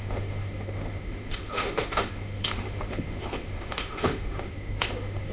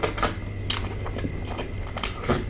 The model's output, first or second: first